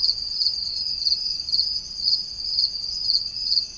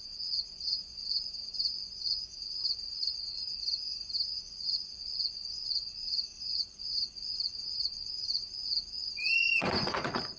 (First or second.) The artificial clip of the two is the second